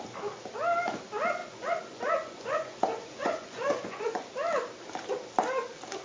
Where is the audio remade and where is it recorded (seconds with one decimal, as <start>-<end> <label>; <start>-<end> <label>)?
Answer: 0.0-1.4 recorded; 1.4-4.3 remade; 4.3-6.0 recorded